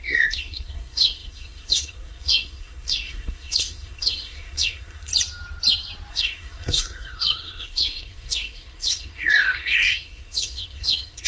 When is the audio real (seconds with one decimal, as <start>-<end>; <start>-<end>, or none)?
5.1-6.1